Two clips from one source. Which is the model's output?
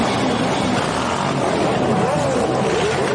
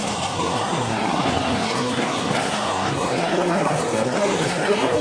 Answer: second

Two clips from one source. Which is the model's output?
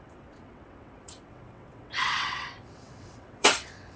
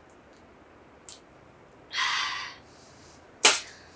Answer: first